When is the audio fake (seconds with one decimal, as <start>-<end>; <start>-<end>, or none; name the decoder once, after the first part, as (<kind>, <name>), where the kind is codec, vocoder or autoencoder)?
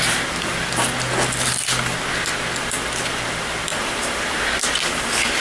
3.7-4.6 (vocoder, BigVGAN v2)